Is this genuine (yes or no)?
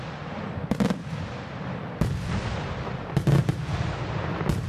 no